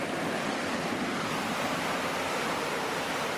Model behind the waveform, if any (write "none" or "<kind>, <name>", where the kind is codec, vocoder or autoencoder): vocoder, BigVGAN v2